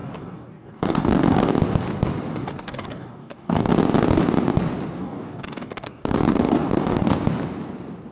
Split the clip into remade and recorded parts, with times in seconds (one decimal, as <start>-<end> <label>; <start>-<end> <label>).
0.0-1.5 remade; 1.5-2.3 recorded; 2.3-3.7 remade; 3.7-5.0 recorded; 5.0-7.1 remade; 7.1-8.1 recorded